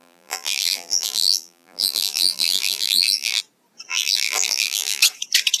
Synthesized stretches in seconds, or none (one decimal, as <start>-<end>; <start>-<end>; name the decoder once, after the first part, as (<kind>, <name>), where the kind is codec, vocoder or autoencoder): 0.0-3.4 (vocoder, BigVGAN v2); 3.9-5.0